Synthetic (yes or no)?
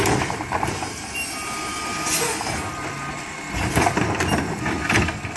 no